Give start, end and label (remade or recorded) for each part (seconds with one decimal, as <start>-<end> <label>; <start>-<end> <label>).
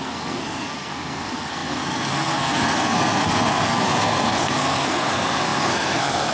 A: 0.0-6.3 remade